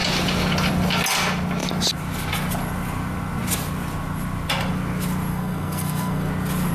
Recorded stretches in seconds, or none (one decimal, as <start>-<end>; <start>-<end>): 0.0-5.3; 6.3-6.7